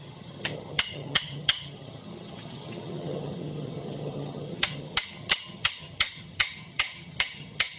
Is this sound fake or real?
fake